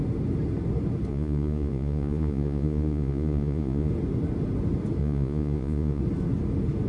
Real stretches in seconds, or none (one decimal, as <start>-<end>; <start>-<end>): 0.0-1.1; 3.9-5.0; 6.0-6.9

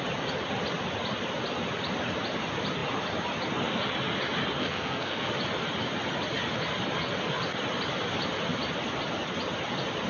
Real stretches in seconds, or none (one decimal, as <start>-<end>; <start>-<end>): 0.0-4.6; 5.3-10.1

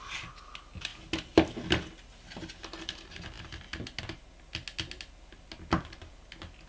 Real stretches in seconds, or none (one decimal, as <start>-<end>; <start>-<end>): 0.0-6.7